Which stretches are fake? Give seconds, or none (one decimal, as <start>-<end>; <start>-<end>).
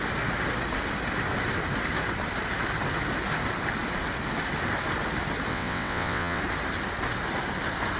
5.5-6.4